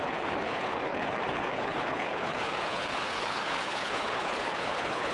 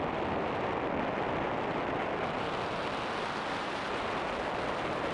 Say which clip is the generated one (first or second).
first